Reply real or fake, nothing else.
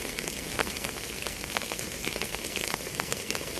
fake